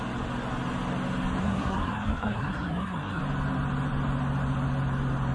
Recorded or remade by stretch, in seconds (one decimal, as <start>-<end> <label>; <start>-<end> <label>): 0.0-1.4 recorded; 1.4-3.2 remade; 3.2-5.3 recorded